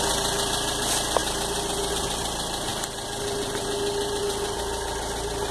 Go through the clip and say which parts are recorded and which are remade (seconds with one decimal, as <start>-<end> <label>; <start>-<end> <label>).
0.0-5.5 recorded